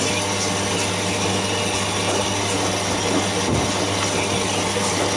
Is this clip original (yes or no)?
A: yes